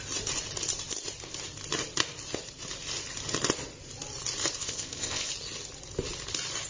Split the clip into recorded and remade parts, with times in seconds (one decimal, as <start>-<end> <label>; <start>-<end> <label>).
0.0-4.6 recorded; 4.6-5.3 remade; 5.3-6.7 recorded